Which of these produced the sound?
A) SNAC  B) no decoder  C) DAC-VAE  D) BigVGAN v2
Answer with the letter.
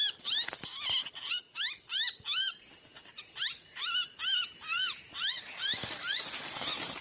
B